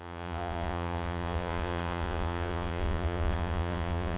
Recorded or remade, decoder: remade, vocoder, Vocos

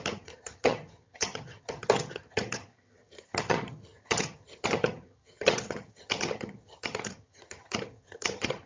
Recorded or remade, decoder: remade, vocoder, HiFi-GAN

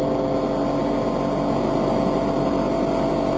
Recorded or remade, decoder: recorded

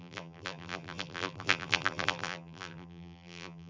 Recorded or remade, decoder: remade, vocoder, BigVGAN v2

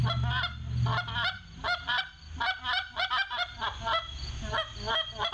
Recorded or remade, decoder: recorded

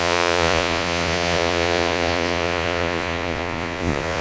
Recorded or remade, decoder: remade, vocoder, Vocos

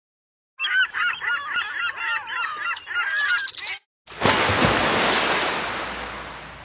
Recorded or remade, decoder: recorded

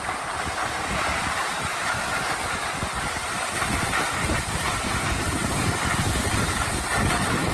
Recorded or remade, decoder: remade, vocoder, BigVGAN v2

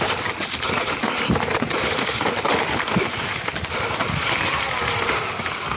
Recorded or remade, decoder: recorded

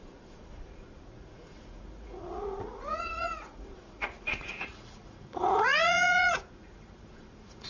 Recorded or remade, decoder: remade, vocoder, Vocos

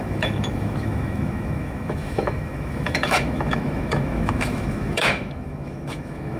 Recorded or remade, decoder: remade, autoencoder, DAC-VAE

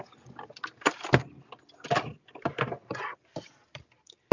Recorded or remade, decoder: recorded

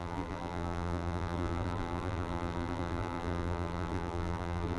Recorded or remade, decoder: remade, vocoder, BigVGAN v2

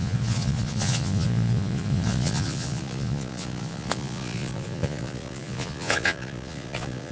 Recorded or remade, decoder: remade, vocoder, Vocos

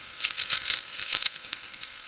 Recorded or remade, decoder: remade, codec, SNAC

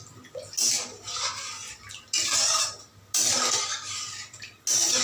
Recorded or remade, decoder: recorded